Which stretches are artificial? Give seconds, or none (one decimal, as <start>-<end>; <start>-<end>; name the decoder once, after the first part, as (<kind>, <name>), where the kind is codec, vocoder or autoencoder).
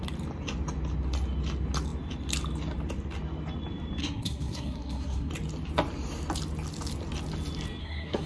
4.0-5.3 (codec, SNAC); 7.8-8.3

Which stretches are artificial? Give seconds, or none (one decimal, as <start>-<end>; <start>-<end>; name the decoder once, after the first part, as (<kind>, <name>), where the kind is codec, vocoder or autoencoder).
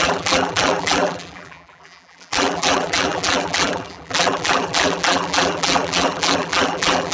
0.0-7.1 (vocoder, BigVGAN v2)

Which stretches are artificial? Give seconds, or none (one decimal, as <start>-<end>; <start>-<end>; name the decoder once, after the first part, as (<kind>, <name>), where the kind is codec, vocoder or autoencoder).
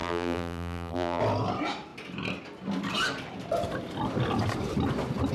0.0-1.2 (vocoder, BigVGAN v2)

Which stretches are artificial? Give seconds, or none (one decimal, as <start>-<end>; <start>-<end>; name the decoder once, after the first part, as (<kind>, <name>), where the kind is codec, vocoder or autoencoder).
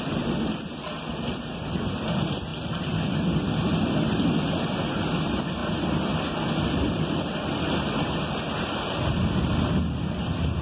none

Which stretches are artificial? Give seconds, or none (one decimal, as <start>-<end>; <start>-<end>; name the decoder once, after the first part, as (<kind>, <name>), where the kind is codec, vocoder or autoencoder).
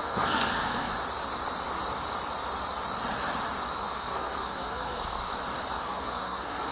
0.0-0.9 (codec, SNAC); 3.8-5.2; 5.7-6.7